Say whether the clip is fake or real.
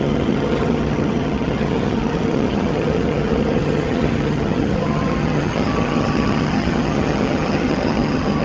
fake